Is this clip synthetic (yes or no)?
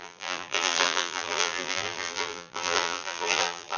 yes